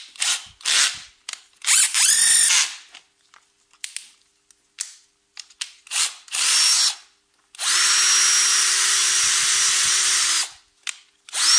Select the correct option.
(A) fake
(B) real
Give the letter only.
B